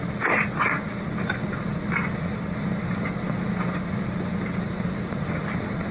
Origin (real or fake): real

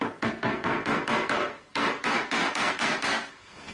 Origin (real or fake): fake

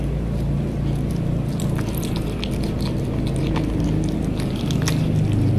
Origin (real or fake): real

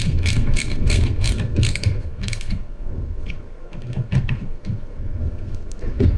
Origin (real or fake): fake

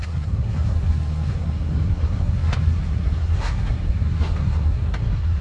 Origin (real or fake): fake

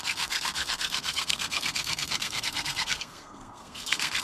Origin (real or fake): fake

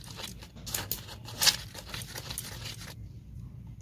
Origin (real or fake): real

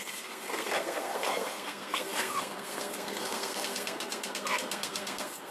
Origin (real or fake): fake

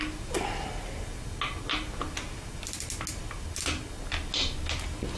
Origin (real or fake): real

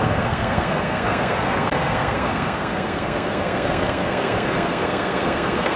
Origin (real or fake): fake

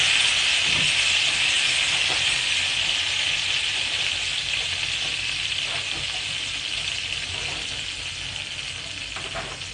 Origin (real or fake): real